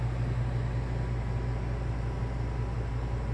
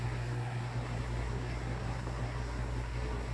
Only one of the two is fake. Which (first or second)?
second